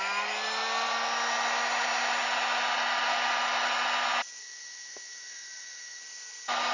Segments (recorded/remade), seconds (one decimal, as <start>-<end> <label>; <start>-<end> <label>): 0.0-4.4 recorded; 4.4-6.0 remade; 6.0-6.7 recorded